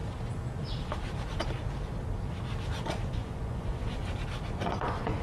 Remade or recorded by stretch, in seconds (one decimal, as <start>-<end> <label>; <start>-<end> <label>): 0.0-3.1 recorded; 3.1-4.0 remade; 4.0-4.5 recorded; 4.5-5.2 remade